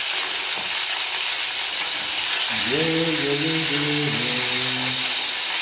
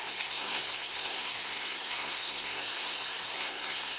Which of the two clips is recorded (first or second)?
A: first